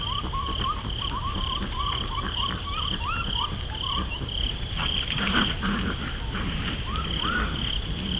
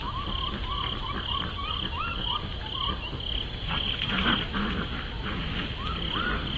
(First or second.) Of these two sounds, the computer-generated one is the first